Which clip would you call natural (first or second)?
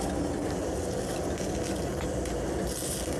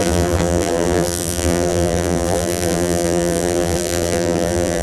first